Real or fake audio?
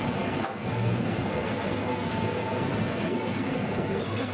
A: fake